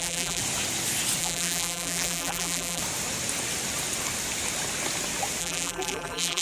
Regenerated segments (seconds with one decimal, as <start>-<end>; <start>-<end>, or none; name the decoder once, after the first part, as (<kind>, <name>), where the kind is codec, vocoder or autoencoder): 0.0-0.4 (vocoder, BigVGAN v2); 1.2-2.8; 5.4-6.4